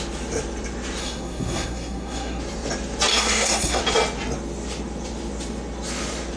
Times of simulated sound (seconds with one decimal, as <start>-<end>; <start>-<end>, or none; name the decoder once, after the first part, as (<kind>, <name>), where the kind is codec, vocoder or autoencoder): 1.0-2.4 (codec, SNAC); 3.1-3.8